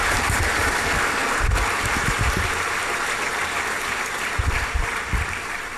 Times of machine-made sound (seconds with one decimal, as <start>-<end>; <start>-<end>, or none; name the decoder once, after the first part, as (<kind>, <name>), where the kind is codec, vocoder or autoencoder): none